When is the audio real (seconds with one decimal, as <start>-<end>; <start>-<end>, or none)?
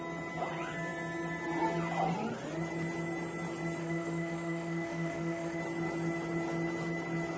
0.0-3.8; 5.6-7.4